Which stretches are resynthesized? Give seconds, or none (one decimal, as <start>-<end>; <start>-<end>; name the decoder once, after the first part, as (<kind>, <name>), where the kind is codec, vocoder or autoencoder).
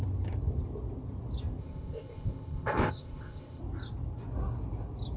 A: 1.6-3.6 (codec, ZipCodec)